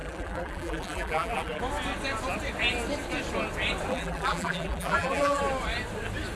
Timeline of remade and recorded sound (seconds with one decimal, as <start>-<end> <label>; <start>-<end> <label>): 0.0-1.6 remade; 1.6-3.9 recorded; 3.9-5.4 remade; 5.4-6.4 recorded